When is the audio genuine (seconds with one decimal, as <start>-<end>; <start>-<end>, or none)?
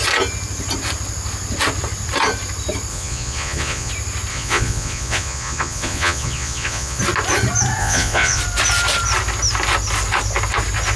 0.0-2.9; 3.9-4.3; 7.0-7.8; 8.4-11.0